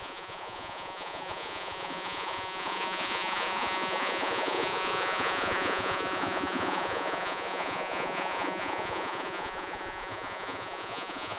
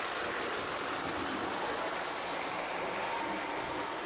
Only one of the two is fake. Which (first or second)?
first